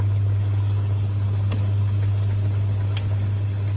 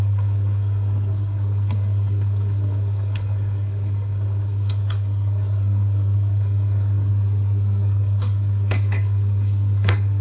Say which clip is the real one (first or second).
first